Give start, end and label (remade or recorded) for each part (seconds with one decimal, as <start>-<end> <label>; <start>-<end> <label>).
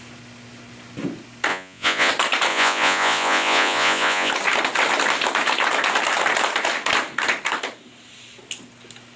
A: 0.0-1.5 recorded; 1.5-2.1 remade; 2.1-2.5 recorded; 2.5-4.3 remade; 4.3-9.2 recorded